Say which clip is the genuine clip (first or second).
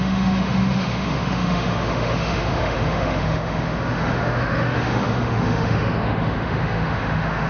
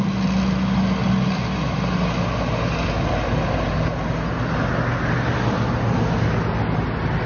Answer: second